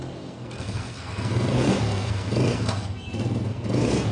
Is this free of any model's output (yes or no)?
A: no